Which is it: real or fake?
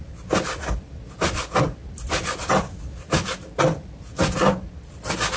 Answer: real